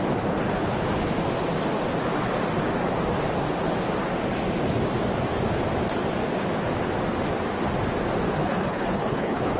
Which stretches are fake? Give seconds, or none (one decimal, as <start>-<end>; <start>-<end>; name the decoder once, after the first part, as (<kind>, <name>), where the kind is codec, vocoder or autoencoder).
8.4-9.6 (codec, HILCodec)